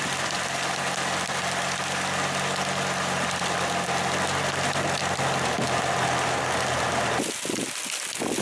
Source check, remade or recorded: recorded